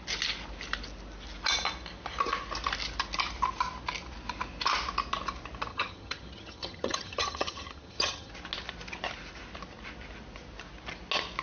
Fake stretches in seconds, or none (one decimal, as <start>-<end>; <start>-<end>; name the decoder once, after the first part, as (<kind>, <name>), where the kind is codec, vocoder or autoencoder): 5.7-8.3 (vocoder, HiFi-GAN)